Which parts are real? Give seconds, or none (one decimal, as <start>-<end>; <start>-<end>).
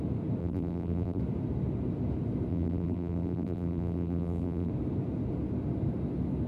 0.0-0.4; 1.2-2.5; 4.7-6.5